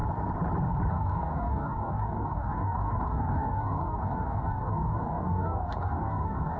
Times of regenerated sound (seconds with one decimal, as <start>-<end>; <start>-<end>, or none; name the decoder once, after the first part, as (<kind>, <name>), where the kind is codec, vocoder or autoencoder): 0.9-6.6 (codec, DAC)